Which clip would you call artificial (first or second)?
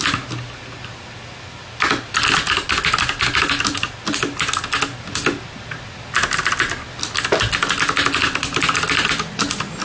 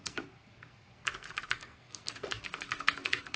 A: second